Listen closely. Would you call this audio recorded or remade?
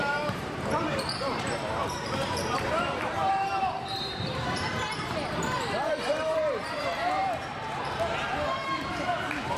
remade